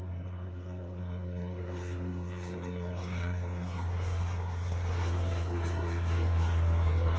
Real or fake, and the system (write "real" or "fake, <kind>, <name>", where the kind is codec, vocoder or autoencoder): fake, codec, SNAC